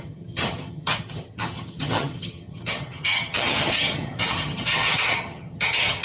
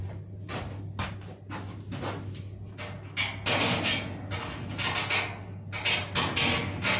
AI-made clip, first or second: first